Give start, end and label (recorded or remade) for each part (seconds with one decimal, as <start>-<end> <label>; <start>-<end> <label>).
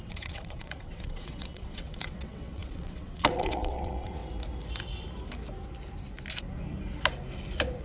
0.0-4.2 remade; 4.2-7.8 recorded